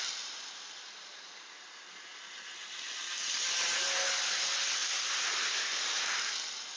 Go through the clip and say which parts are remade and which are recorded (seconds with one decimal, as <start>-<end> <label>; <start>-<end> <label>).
0.0-4.8 recorded; 4.8-5.3 remade; 5.3-6.8 recorded